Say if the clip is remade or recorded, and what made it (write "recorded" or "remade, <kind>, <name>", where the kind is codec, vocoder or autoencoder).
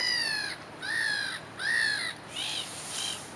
recorded